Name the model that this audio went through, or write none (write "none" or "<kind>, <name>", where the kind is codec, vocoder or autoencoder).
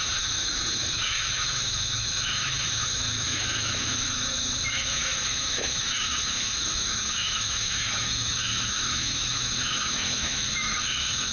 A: autoencoder, DAC-VAE